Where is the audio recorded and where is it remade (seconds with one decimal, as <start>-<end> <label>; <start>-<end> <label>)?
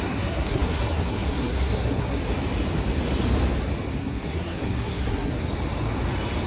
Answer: 0.0-2.2 remade; 2.2-4.0 recorded; 4.0-5.3 remade; 5.3-6.5 recorded